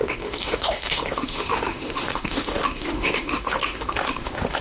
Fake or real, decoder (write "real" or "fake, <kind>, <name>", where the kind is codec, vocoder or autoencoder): fake, autoencoder, DAC-VAE